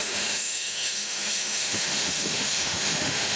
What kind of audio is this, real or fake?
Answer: fake